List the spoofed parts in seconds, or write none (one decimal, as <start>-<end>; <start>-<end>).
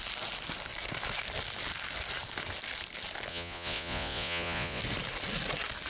3.3-4.8